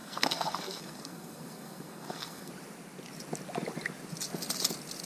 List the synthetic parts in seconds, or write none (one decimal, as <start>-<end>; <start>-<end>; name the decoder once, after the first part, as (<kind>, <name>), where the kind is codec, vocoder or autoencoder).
0.0-2.5 (codec, SNAC)